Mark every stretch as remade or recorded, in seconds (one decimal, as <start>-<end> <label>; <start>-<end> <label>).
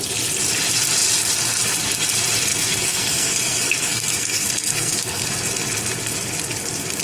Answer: 0.0-2.5 recorded; 2.5-5.3 remade; 5.3-7.0 recorded